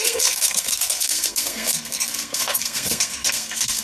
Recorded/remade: remade